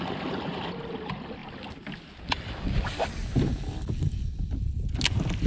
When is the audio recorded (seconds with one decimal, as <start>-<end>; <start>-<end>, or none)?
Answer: 0.0-5.5